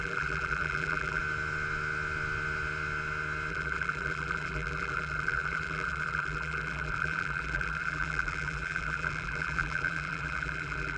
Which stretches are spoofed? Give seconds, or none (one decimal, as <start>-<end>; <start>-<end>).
0.0-1.2; 3.5-11.0